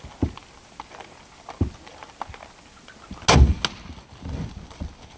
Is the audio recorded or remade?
recorded